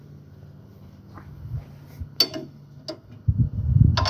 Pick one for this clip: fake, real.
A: real